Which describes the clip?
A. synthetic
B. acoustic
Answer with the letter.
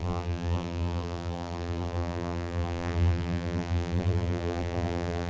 A